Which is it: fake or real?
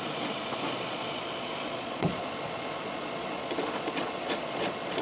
fake